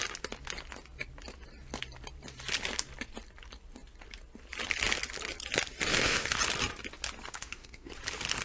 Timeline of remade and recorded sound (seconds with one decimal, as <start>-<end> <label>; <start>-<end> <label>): 0.0-5.9 recorded; 5.9-6.4 remade; 6.4-7.3 recorded; 7.3-7.9 remade; 7.9-8.4 recorded